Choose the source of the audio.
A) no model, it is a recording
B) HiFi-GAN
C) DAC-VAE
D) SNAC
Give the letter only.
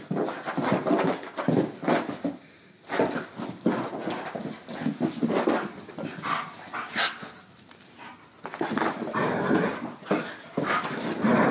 A